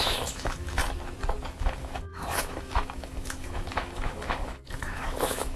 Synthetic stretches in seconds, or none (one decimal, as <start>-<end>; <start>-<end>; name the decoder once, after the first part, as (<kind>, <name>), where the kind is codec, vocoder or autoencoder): 0.0-0.8 (autoencoder, DAC-VAE); 1.6-5.6